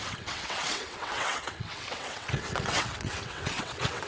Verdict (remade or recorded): remade